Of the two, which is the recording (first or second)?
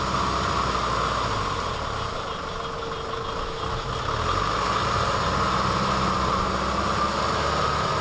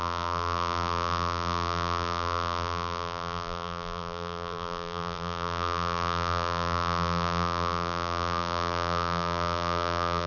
first